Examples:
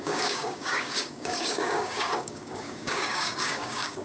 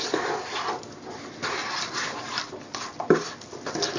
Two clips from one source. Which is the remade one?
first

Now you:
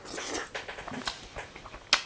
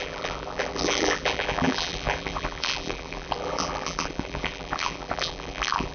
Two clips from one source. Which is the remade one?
second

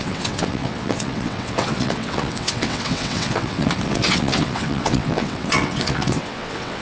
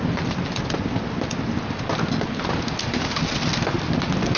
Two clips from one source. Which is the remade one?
first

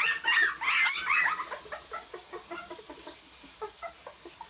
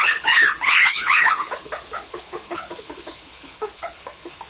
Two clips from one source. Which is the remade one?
second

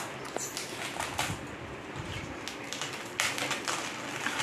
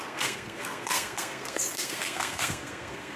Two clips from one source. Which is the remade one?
second